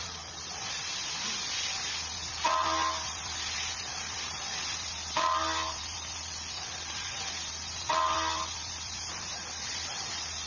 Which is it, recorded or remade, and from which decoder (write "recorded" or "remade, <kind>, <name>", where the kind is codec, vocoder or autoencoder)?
recorded